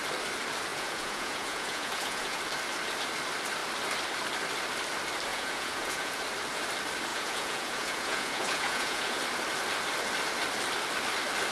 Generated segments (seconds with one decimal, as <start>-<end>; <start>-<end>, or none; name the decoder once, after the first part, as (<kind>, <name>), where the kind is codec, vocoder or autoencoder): 0.7-2.4 (vocoder, Vocos); 5.3-6.2; 7.1-9.2